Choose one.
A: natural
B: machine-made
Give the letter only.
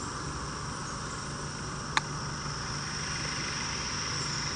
A